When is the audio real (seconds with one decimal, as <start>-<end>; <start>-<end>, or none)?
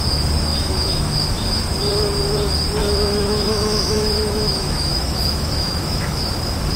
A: 0.0-0.5; 1.6-2.8; 6.2-6.8